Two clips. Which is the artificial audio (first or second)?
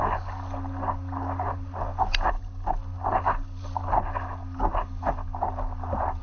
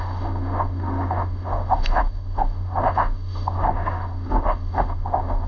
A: second